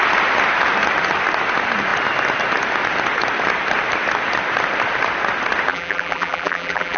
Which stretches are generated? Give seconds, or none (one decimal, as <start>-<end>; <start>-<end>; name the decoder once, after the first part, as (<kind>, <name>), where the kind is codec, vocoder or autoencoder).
5.7-7.0 (vocoder, BigVGAN v2)